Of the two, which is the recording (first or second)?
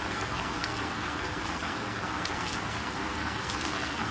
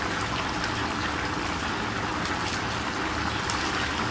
second